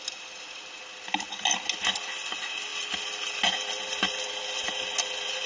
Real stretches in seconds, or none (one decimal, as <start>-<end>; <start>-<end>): 0.0-5.5

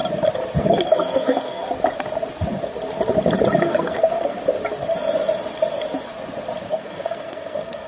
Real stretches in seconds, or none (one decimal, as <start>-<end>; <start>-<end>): 0.0-0.6; 1.6-3.6; 4.4-6.7

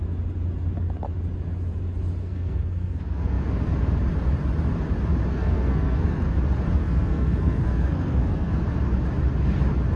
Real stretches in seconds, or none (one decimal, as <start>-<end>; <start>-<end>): 0.0-2.2; 3.5-5.3; 6.3-6.8; 8.6-10.0

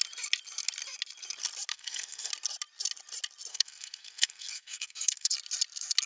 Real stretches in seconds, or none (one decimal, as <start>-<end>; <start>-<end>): 0.0-1.7; 2.3-3.5; 5.3-6.1